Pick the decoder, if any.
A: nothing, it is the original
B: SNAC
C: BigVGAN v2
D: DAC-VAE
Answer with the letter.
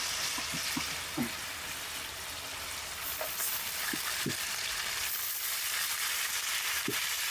A